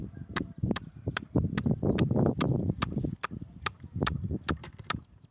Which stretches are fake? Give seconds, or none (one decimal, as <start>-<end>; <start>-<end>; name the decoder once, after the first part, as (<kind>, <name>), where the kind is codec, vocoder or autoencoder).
0.0-5.3 (vocoder, BigVGAN v2)